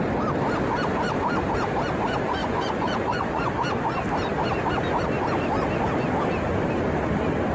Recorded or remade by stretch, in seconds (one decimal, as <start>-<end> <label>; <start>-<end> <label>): 0.0-2.4 recorded; 2.4-3.5 remade; 3.5-7.5 recorded